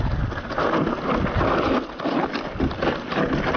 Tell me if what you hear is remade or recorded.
recorded